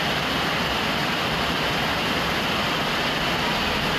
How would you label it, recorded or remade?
recorded